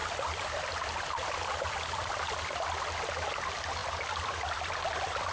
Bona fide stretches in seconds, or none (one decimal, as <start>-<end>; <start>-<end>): 0.0-5.3